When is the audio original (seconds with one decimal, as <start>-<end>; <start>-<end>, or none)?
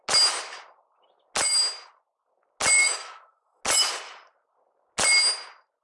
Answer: 0.0-2.8; 3.6-5.8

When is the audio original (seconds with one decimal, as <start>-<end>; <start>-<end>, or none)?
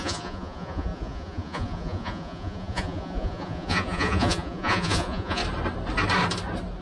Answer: 5.4-6.8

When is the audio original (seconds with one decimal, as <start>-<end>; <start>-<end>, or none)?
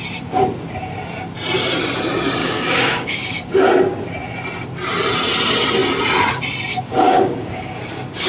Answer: 0.0-2.4; 3.5-6.7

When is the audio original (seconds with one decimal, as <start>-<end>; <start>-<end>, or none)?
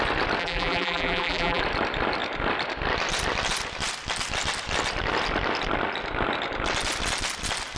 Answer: 0.0-0.4; 1.6-7.8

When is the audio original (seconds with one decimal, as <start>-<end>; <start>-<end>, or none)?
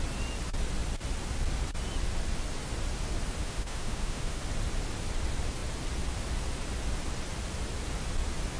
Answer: 0.0-3.4; 4.4-8.6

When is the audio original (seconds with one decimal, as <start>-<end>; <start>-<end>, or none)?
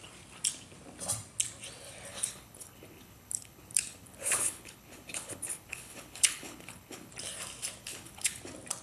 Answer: 0.0-2.1; 7.1-7.8; 8.4-8.8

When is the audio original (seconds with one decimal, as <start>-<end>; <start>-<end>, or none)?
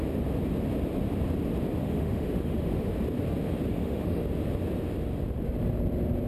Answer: 0.0-1.8; 2.9-3.7; 4.2-6.3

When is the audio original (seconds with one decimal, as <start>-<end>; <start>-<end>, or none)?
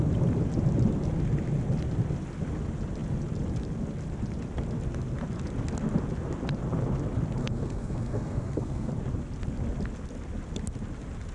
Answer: 0.0-7.4; 8.9-11.3